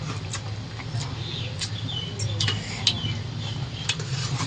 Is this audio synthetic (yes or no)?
no